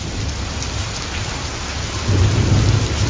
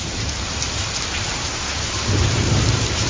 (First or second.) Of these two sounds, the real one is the first